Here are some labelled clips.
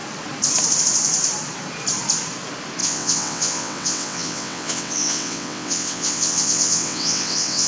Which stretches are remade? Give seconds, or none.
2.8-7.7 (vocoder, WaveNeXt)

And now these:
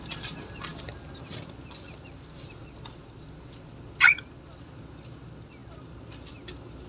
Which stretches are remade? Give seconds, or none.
none

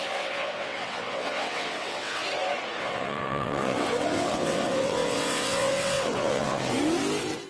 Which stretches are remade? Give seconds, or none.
0.0-2.2 (vocoder, WaveNeXt); 2.8-6.7

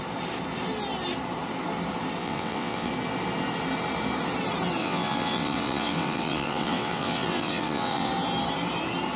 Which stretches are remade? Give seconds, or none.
2.2-2.9 (vocoder, WaveNeXt); 4.8-8.1

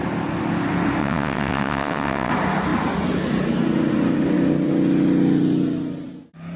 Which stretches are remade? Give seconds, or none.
1.0-2.3 (vocoder, WaveNeXt)

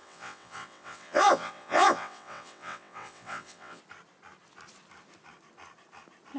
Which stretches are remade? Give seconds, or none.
0.0-3.8 (vocoder, WaveNeXt)

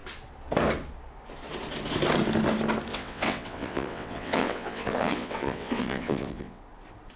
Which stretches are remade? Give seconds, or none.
2.9-6.6 (vocoder, WaveNeXt)

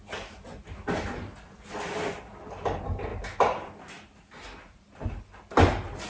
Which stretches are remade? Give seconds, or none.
none